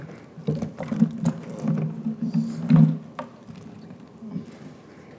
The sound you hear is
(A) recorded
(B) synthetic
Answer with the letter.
A